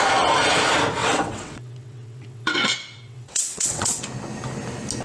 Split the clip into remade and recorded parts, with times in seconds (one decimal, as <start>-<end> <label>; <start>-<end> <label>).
0.0-1.0 recorded; 1.0-4.0 remade; 4.0-5.0 recorded